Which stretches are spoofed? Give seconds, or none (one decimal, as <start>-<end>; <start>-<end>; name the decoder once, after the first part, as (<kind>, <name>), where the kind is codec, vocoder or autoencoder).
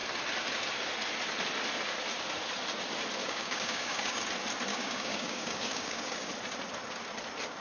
3.2-4.2 (codec, DAC); 4.7-6.3